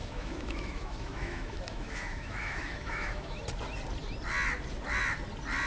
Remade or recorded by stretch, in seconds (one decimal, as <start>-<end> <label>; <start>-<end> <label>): 0.0-3.4 remade; 3.4-5.7 recorded